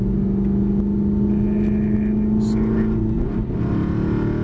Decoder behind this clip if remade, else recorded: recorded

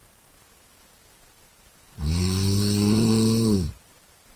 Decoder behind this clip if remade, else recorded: remade, vocoder, BigVGAN v2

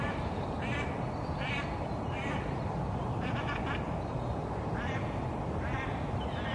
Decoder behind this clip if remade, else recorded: remade, vocoder, BigVGAN v2